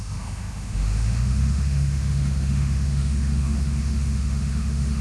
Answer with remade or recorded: remade